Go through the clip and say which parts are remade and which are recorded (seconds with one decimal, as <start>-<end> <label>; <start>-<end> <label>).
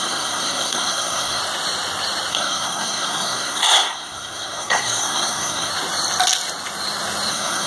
0.0-1.4 remade; 1.4-2.3 recorded; 2.3-5.7 remade; 5.7-7.3 recorded; 7.3-7.7 remade